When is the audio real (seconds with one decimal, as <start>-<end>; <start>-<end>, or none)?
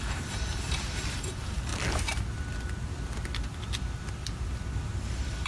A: 1.7-5.0